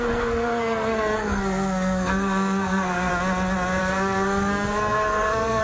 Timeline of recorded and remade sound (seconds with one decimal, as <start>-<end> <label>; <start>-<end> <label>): 0.0-3.1 remade; 3.1-3.8 recorded; 3.8-5.6 remade